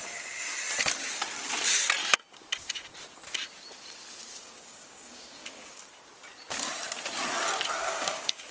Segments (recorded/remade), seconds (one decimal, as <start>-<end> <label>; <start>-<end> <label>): 0.0-4.3 recorded; 4.3-5.9 remade; 5.9-7.8 recorded; 7.8-8.5 remade